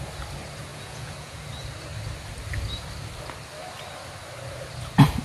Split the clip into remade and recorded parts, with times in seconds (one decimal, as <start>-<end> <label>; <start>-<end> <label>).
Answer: 0.0-0.7 recorded; 0.7-1.4 remade; 1.4-5.2 recorded